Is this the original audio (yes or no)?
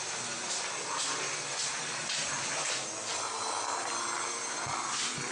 yes